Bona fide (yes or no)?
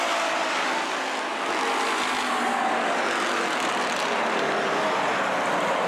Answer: yes